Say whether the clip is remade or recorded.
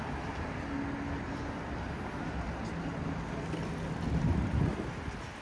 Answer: recorded